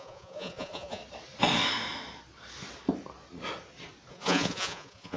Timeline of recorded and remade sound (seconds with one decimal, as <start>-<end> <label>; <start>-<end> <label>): 0.0-1.0 remade; 1.0-4.1 recorded; 4.1-5.2 remade